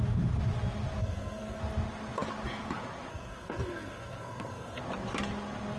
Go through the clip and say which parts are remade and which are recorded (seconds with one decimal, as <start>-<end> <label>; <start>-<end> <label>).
0.0-1.0 recorded; 1.0-1.6 remade; 1.6-3.1 recorded; 3.1-4.8 remade; 4.8-5.8 recorded